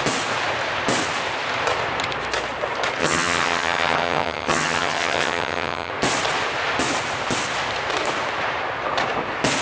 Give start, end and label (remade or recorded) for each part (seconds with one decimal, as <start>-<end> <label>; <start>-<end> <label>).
0.0-3.0 recorded; 3.0-5.9 remade; 5.9-9.6 recorded